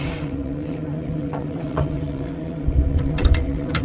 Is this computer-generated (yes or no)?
yes